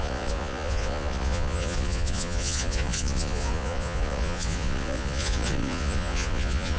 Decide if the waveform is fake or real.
fake